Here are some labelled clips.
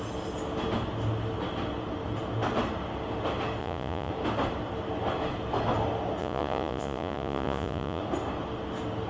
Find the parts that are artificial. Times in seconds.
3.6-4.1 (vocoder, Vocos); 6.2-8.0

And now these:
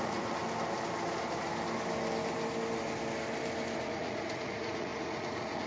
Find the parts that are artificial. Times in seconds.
0.0-0.4 (vocoder, Vocos); 3.8-5.7

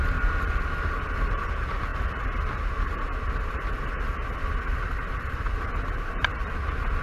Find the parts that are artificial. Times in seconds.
none

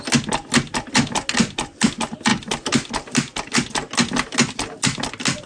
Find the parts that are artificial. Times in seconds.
none

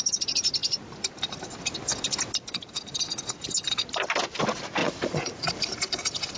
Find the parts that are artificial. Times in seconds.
4.8-5.5 (vocoder, Vocos)

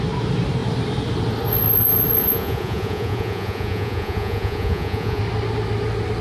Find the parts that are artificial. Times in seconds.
2.2-5.2 (vocoder, Vocos)